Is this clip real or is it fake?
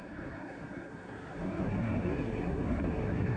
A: fake